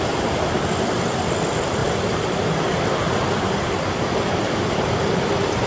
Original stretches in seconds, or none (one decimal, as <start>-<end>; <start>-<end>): 1.8-4.1